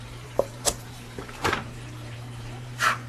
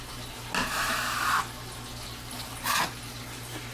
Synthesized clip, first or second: first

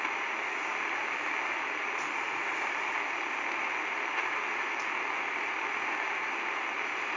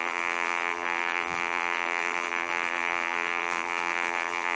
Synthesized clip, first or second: second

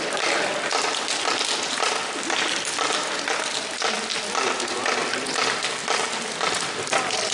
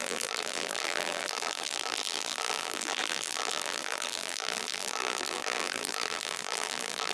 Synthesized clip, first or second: second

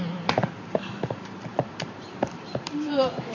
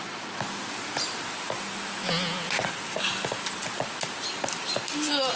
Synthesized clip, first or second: first